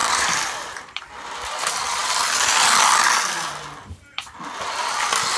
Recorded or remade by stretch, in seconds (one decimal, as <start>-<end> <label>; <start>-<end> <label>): 0.0-1.0 remade; 1.0-5.4 recorded